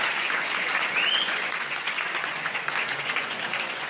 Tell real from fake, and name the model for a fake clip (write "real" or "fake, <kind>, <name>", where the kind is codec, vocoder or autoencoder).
fake, vocoder, Vocos